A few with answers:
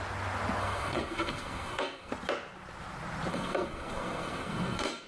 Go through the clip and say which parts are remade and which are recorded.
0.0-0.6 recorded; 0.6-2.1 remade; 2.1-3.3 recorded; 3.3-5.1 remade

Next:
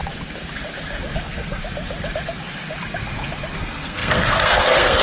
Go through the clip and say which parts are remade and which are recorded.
0.0-1.2 recorded; 1.2-1.6 remade; 1.6-3.6 recorded; 3.6-5.0 remade